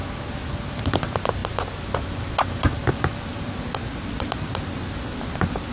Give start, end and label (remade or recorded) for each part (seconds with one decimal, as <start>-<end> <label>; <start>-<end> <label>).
0.0-5.7 recorded